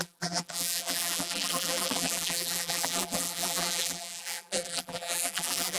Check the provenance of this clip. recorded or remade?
remade